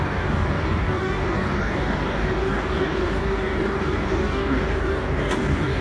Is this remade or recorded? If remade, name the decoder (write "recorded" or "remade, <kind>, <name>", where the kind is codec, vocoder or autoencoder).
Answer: remade, codec, DAC